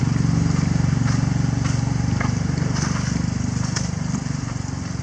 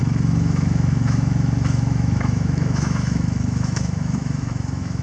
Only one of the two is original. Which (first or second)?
first